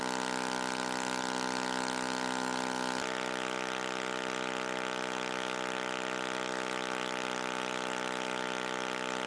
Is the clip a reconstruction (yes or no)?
no